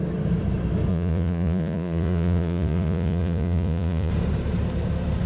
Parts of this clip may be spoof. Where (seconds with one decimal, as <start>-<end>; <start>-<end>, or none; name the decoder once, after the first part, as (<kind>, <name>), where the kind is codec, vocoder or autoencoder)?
0.9-4.1 (vocoder, Vocos)